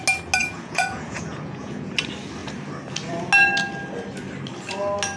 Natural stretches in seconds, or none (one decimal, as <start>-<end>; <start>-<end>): 0.0-0.4; 1.9-5.2

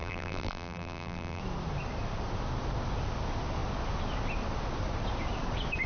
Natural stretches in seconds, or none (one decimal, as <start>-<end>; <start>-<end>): 1.4-5.9

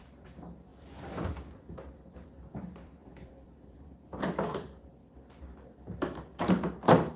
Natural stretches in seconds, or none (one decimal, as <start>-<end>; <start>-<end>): 4.9-6.4

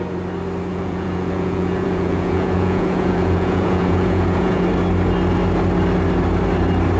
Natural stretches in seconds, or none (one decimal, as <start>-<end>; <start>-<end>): 0.0-0.7; 4.6-7.0

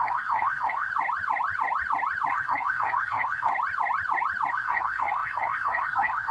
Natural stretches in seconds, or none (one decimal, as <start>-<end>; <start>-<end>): 0.9-2.3; 3.5-4.5